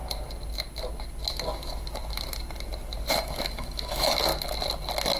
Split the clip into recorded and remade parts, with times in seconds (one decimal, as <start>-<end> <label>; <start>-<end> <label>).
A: 0.0-3.1 recorded; 3.1-4.3 remade; 4.3-5.2 recorded